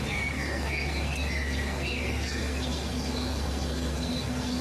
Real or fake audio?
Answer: fake